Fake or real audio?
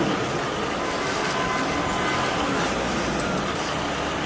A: real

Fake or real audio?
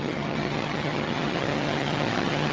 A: fake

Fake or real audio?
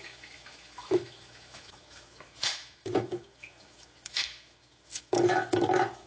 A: fake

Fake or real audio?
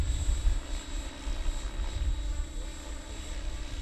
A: real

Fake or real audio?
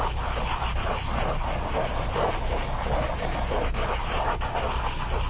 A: real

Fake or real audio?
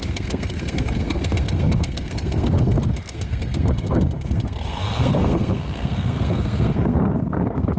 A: fake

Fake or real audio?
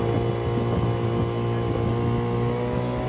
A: real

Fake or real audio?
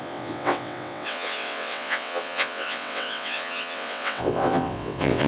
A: fake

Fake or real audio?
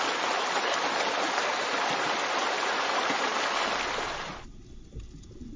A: real